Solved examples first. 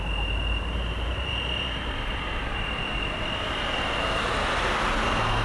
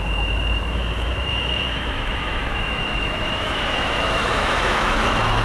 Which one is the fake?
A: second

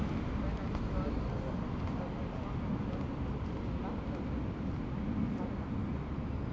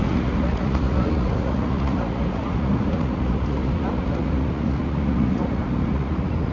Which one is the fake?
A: second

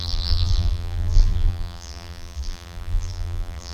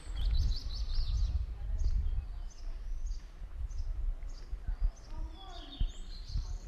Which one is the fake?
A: first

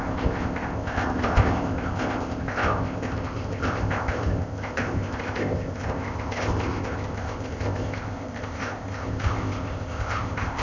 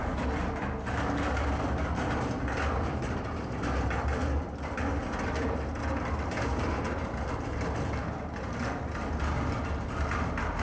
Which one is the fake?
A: first